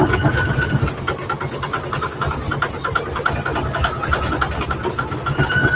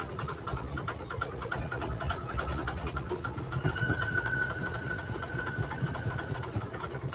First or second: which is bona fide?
first